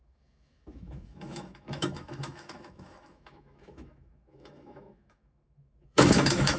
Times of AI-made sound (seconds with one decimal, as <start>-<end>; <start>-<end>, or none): 0.0-6.6